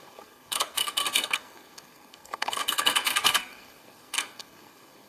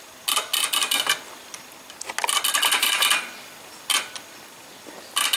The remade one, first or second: first